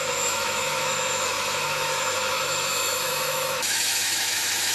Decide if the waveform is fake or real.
fake